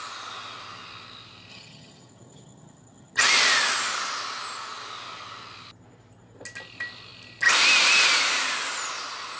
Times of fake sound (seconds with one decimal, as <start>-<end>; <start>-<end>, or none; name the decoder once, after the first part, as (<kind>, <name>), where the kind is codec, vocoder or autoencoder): 1.5-3.2 (vocoder, HiFi-GAN)

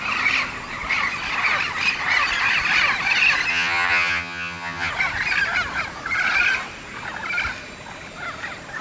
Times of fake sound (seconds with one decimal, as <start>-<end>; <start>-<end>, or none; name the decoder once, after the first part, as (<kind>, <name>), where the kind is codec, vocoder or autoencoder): 3.5-4.9 (vocoder, HiFi-GAN)

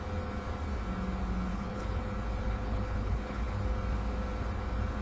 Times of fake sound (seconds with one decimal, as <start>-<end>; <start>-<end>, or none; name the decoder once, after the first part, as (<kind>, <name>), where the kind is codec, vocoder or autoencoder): 1.5-2.0 (codec, HILCodec); 2.4-3.6

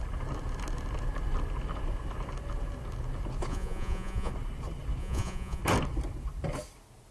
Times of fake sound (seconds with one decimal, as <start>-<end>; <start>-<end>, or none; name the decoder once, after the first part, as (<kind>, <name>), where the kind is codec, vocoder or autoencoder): 3.5-4.3 (vocoder, Vocos); 5.0-5.6

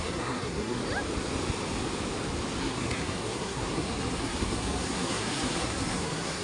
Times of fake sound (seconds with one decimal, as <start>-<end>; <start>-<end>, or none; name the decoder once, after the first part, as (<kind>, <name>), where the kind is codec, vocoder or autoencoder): 0.0-0.8 (codec, SNAC); 2.6-6.4

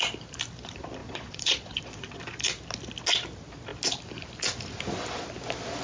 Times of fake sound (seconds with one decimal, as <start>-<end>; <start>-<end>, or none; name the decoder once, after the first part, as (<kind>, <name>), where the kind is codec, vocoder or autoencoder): 1.0-2.2 (vocoder, Vocos)